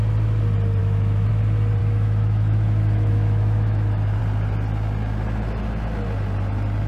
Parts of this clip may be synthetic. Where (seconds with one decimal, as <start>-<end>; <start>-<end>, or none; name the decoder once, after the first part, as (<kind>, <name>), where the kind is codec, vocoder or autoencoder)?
0.8-1.3 (autoencoder, DAC-VAE); 1.8-4.2

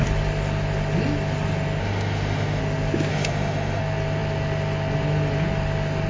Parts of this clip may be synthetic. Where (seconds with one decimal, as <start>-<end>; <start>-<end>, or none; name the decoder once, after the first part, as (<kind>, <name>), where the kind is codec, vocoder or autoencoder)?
1.8-2.6 (autoencoder, DAC-VAE); 3.1-3.8

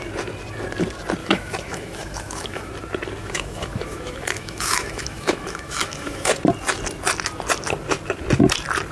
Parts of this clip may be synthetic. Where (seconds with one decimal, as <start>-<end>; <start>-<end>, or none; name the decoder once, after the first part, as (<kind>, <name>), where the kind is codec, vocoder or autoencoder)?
1.2-2.7 (autoencoder, DAC-VAE); 3.2-6.3

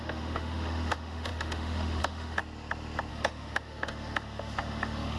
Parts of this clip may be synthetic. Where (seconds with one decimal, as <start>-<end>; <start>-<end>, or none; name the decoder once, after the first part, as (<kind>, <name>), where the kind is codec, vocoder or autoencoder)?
0.0-2.4 (autoencoder, DAC-VAE); 3.1-5.2